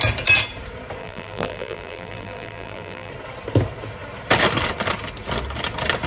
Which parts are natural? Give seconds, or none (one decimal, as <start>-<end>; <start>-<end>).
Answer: 0.0-1.0; 3.1-6.1

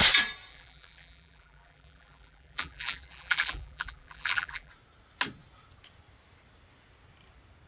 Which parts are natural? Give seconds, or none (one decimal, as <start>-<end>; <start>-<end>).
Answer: 0.0-0.5; 4.7-7.7

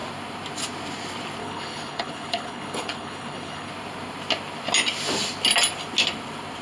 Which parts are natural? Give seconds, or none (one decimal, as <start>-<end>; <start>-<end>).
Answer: 0.0-1.4; 3.7-6.6

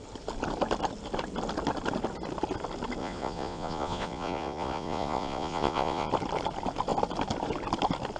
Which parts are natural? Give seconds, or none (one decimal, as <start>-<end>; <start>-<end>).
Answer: 0.0-3.0; 6.1-8.2

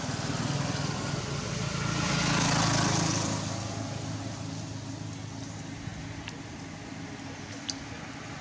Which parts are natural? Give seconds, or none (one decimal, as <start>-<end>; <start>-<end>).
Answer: 0.0-8.4